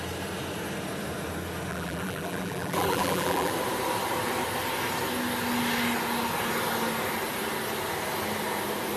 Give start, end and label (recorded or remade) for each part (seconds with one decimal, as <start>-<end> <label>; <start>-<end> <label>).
0.0-1.7 recorded; 1.7-3.5 remade; 3.5-9.0 recorded